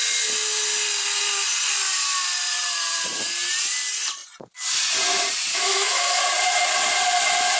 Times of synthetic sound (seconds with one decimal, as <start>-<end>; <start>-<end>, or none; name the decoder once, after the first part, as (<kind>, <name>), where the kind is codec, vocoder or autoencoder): 5.5-6.2 (autoencoder, DAC-VAE)